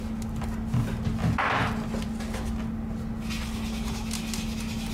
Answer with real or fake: real